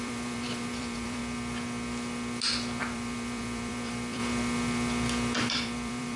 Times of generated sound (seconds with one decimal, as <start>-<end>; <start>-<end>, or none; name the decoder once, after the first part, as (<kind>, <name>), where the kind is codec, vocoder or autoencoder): 0.0-1.2 (vocoder, BigVGAN v2); 2.8-4.2; 5.5-6.2